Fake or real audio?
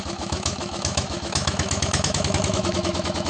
fake